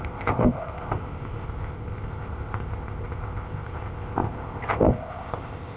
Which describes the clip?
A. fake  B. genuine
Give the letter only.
A